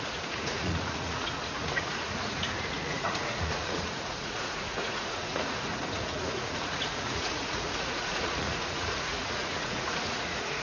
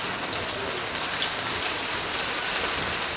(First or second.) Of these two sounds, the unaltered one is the second